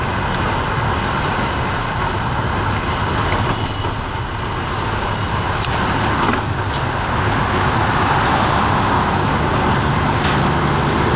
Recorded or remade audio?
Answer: recorded